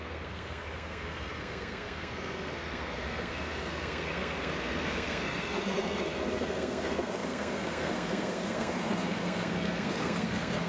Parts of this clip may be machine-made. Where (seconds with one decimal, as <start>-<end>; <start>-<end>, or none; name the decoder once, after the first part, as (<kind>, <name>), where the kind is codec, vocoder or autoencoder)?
0.0-10.7 (codec, SNAC)